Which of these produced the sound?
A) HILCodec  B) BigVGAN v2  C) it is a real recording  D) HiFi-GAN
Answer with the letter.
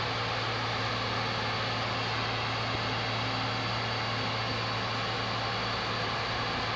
C